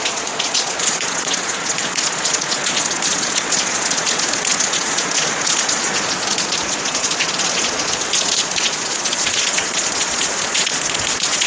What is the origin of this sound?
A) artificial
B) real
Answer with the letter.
A